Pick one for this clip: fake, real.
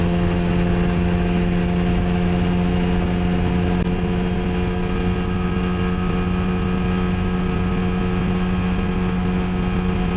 real